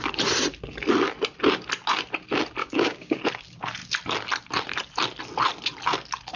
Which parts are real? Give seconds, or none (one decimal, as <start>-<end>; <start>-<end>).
0.0-2.6; 3.2-6.4